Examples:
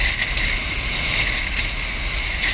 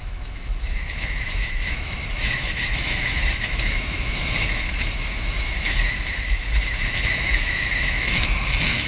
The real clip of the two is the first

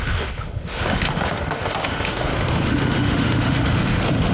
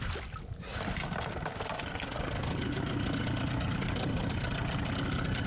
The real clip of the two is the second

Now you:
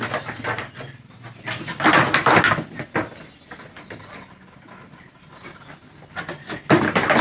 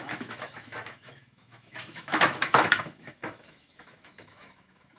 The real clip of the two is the first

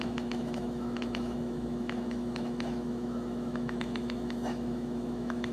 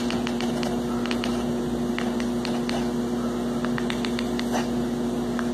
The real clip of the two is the second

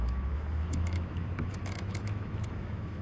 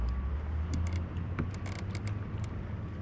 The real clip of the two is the second